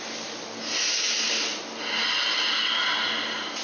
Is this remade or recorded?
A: recorded